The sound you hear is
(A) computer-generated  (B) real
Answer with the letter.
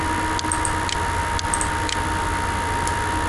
B